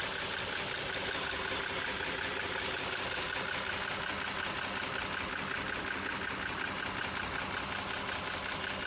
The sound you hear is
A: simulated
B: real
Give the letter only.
B